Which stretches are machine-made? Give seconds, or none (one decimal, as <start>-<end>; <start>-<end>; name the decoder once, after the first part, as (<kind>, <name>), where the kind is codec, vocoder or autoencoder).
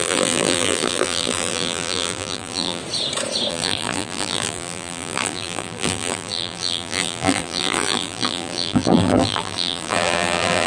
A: 0.0-2.8 (vocoder, BigVGAN v2); 3.5-10.7